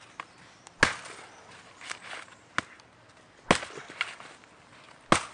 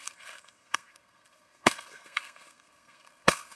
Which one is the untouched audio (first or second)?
first